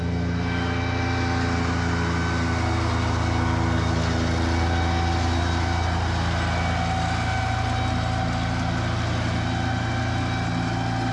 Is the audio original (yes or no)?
yes